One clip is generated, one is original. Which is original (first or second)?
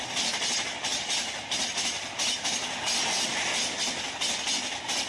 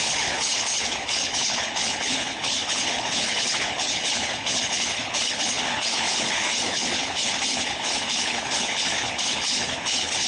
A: first